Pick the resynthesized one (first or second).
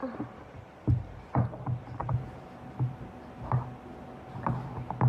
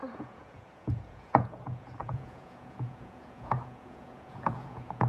second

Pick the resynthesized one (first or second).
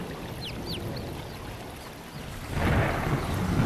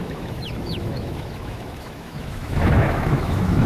second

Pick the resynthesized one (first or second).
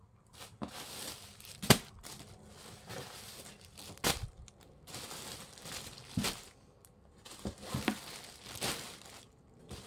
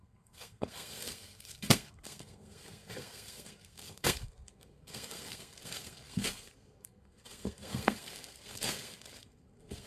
second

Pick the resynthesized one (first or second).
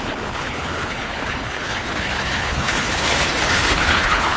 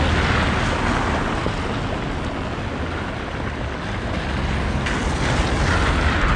first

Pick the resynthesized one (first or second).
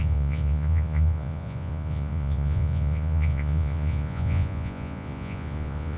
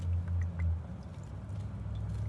first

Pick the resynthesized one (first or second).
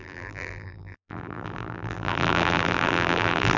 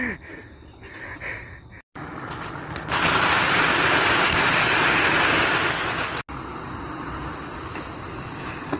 first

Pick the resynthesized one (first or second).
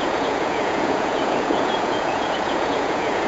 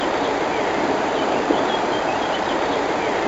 first